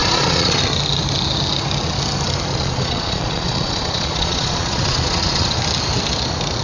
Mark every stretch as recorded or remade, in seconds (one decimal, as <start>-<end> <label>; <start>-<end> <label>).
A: 0.0-0.6 remade; 0.6-2.5 recorded; 2.5-5.6 remade; 5.6-6.6 recorded